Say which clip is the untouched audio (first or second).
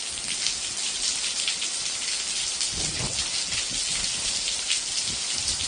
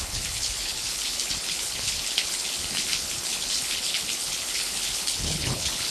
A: first